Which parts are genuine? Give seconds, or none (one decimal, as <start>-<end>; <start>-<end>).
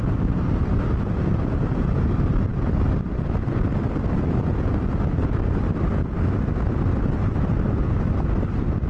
0.0-8.9